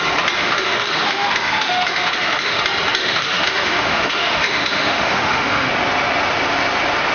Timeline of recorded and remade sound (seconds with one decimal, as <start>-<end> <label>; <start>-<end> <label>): 0.0-0.4 recorded; 0.4-2.6 remade; 2.6-3.0 recorded; 3.0-5.7 remade; 5.7-7.1 recorded